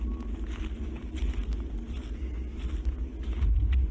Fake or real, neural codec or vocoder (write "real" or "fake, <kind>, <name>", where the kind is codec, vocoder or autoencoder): real